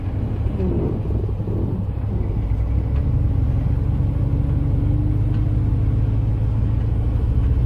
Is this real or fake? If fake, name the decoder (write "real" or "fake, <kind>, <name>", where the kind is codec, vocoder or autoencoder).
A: real